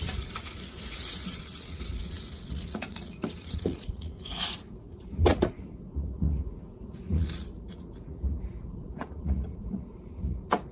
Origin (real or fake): fake